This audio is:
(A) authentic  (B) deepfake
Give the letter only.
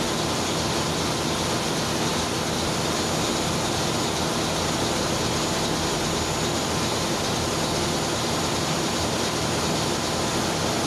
A